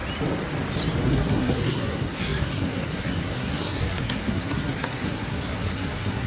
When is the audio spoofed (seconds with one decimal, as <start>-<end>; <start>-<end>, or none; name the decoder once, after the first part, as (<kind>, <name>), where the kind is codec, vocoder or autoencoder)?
1.0-6.3 (codec, SNAC)

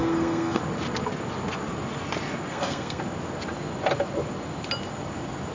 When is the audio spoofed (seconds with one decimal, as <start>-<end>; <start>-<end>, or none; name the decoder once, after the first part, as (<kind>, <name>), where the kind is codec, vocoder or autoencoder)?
0.0-0.6 (codec, SNAC); 2.5-3.0

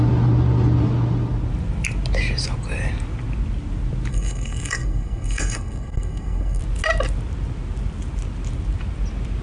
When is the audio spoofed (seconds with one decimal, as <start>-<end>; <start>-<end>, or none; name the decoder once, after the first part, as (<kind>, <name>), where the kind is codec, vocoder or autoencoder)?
4.1-6.6 (codec, SNAC)